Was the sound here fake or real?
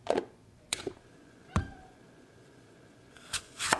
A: fake